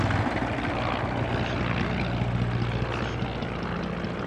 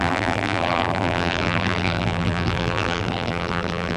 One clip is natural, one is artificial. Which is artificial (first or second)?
second